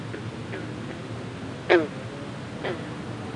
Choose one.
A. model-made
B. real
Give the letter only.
B